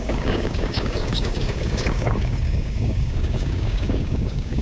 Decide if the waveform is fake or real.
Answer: fake